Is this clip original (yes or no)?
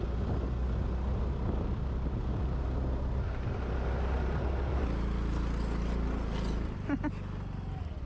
yes